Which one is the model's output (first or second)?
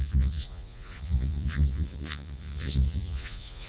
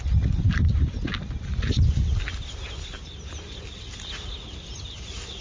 first